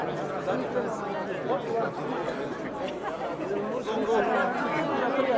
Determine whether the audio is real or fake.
real